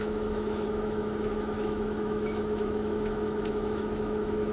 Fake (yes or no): yes